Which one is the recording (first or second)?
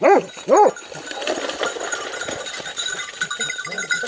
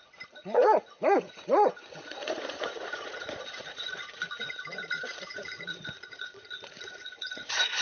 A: first